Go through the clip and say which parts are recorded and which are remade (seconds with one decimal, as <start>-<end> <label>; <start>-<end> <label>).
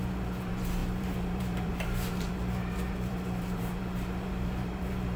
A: 0.0-5.2 remade